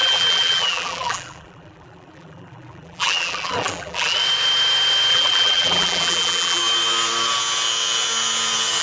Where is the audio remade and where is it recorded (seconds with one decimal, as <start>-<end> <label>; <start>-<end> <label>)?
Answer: 0.0-4.2 remade; 4.2-5.1 recorded; 5.1-6.6 remade; 6.6-8.8 recorded